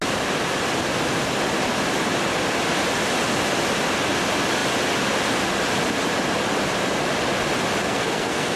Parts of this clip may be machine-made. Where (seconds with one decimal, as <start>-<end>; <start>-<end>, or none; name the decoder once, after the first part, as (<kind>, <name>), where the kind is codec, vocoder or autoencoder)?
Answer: 7.8-8.6 (codec, SNAC)